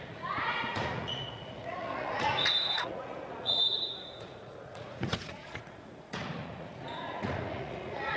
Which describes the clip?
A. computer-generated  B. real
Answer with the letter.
A